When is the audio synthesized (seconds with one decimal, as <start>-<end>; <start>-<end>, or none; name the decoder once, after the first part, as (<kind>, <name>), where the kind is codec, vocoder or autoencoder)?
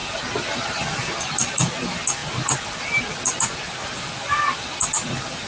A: none